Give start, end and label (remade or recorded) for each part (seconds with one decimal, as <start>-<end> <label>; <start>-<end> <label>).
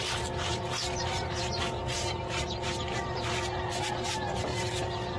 0.0-5.2 recorded